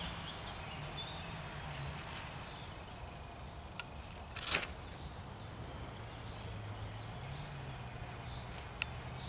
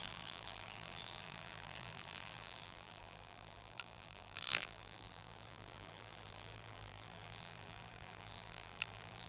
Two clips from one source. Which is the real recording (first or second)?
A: first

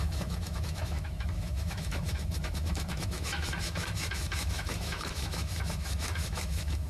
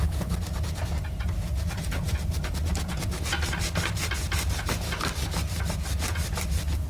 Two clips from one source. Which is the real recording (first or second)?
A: second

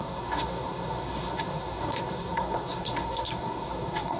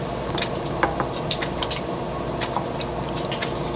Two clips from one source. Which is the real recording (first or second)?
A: second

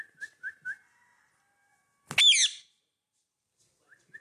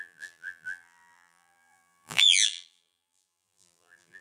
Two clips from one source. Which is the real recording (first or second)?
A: first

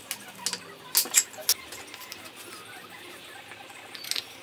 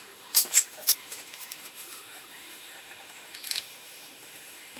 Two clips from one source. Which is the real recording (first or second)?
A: first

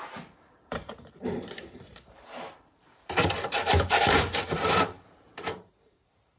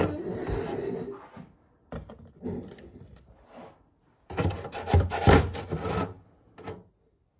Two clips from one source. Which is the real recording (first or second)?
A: second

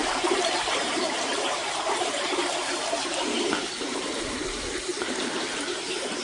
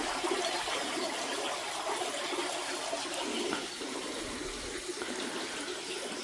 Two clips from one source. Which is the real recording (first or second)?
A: second